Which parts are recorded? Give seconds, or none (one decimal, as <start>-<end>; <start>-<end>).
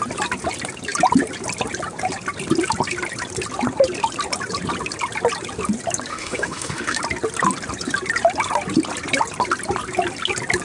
0.0-6.1; 7.0-10.6